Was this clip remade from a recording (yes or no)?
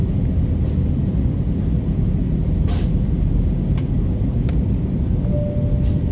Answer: no